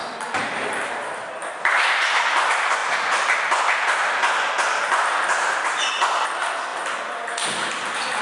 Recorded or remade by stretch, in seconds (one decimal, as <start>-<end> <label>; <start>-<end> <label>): 0.0-8.2 recorded